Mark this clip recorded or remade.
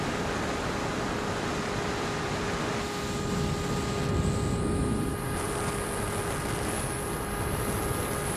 recorded